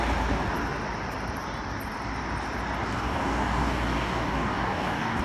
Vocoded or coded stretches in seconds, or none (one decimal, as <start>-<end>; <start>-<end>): 2.8-5.2